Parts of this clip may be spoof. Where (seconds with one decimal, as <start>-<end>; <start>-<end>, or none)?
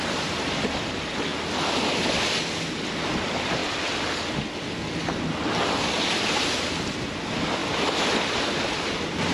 0.0-1.3; 3.2-3.6; 6.6-7.6